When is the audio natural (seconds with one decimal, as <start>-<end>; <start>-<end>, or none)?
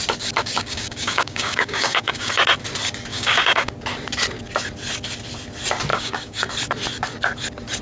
0.0-0.4; 2.3-3.1; 3.7-5.9; 6.5-7.8